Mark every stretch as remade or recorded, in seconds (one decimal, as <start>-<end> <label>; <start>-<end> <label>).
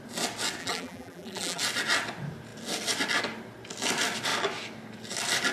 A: 0.0-0.6 recorded; 0.6-1.6 remade; 1.6-5.5 recorded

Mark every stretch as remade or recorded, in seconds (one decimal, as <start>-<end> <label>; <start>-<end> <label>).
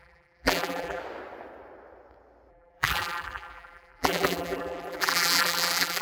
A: 0.0-1.0 remade; 1.0-2.5 recorded; 2.5-6.0 remade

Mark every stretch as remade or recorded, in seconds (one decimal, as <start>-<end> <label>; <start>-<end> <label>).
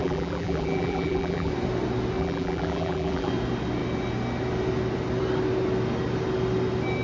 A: 0.0-1.5 remade; 1.5-2.2 recorded; 2.2-3.3 remade; 3.3-7.0 recorded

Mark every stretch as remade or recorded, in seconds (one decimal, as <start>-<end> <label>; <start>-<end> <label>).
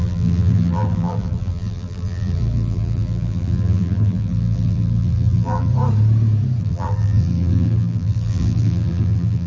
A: 0.0-5.7 remade; 5.7-6.6 recorded; 6.6-9.5 remade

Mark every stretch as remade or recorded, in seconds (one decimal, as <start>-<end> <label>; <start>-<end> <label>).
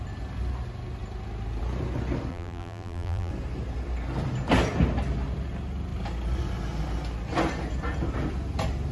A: 0.0-2.3 recorded; 2.3-3.3 remade; 3.3-8.9 recorded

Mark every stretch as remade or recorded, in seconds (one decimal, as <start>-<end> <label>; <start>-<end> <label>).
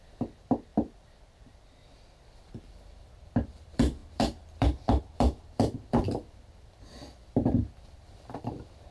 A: 0.0-8.9 remade